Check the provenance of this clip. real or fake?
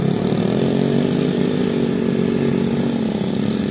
real